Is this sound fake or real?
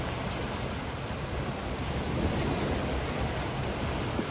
fake